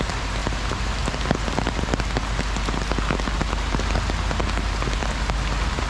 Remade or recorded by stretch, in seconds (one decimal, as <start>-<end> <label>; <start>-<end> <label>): 0.0-5.0 recorded; 5.0-5.9 remade